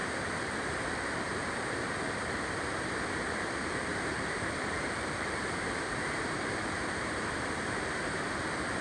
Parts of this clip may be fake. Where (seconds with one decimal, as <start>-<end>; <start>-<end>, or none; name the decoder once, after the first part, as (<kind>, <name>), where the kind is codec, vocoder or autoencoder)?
0.0-2.8 (vocoder, BigVGAN v2); 3.9-8.0